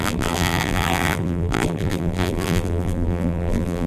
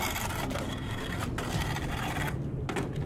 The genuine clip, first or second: second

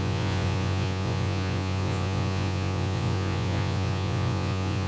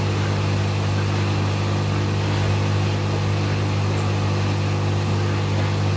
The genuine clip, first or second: second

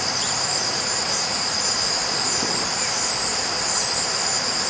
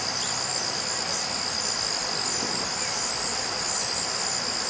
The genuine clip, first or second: second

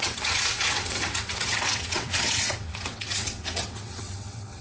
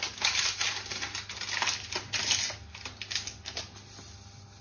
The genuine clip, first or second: second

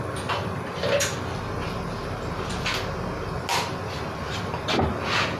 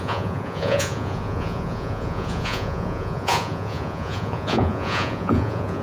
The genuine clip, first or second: first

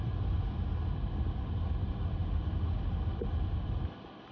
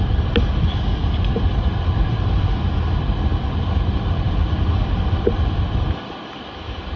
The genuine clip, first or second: first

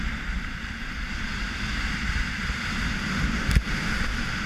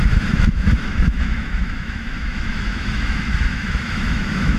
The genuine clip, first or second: first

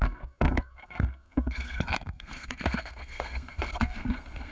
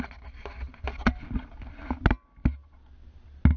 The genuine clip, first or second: second